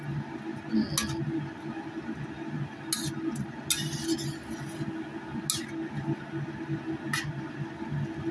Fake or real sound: real